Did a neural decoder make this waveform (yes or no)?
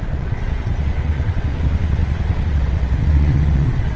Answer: yes